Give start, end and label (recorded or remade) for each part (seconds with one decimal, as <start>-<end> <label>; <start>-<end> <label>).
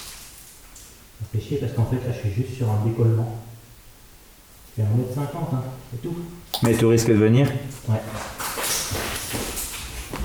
0.0-1.3 recorded; 1.3-2.1 remade; 2.1-10.2 recorded